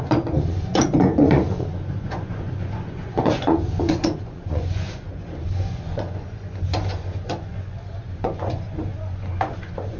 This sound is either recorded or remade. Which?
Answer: remade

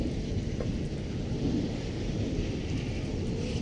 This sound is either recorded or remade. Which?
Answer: recorded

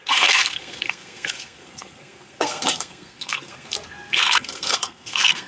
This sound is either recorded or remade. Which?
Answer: remade